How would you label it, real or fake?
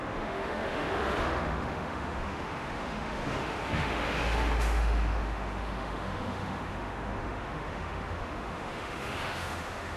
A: fake